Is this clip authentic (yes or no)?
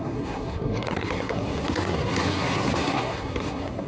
no